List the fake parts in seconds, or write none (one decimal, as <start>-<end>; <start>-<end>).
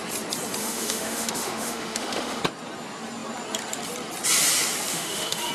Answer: 0.6-2.4; 4.9-5.5